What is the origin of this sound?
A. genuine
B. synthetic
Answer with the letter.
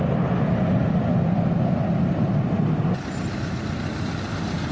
A